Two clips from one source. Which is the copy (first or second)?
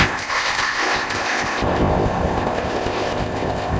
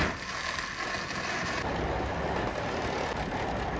first